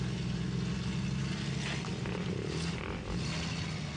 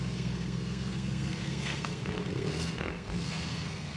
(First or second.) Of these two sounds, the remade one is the second